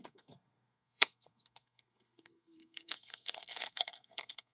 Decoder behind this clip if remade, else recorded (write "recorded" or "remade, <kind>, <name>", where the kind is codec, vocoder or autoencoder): remade, codec, SNAC